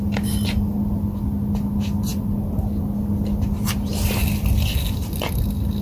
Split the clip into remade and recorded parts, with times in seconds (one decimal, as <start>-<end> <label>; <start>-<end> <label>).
0.0-5.8 recorded